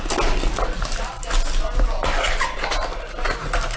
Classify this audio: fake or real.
real